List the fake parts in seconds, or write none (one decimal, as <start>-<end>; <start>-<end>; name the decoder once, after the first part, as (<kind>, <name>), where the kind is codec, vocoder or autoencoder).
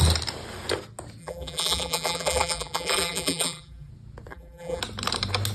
1.2-3.9 (vocoder, BigVGAN v2); 4.3-4.8